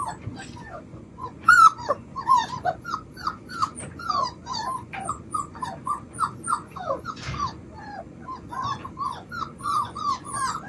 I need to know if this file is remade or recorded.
remade